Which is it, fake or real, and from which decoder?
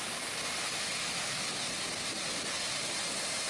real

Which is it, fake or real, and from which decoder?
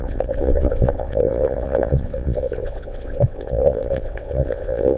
fake, vocoder, WaveNeXt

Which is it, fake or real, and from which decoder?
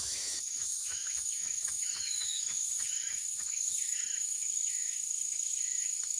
fake, autoencoder, DAC-VAE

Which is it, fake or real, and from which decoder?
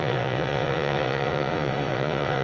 fake, vocoder, Vocos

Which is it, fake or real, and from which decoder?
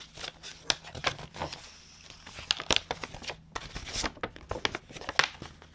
real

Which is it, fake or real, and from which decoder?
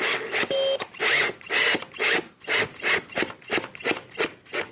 real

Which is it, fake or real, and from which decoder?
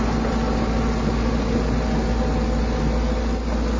real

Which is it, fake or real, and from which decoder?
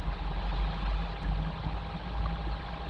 real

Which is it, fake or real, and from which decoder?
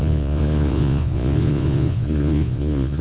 fake, vocoder, Vocos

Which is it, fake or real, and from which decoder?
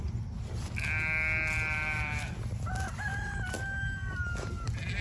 real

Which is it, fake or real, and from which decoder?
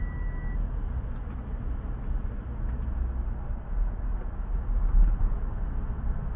real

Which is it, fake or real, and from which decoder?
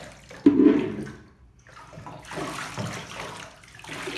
real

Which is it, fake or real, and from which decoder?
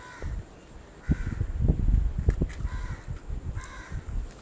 real